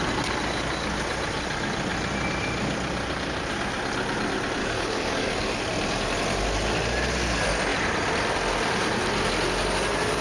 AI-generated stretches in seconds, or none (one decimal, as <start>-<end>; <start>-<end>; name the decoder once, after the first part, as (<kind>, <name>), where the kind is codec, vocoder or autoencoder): 4.6-5.6 (codec, DAC)